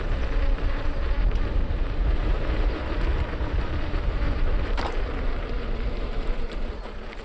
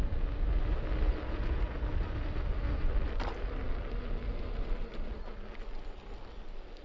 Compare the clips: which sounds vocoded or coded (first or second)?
first